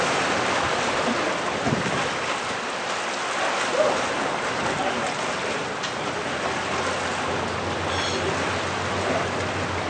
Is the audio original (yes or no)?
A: yes